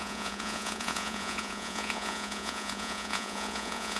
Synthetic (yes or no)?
yes